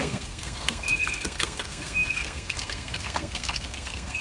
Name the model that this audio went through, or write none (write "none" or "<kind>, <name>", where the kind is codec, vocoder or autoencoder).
codec, SNAC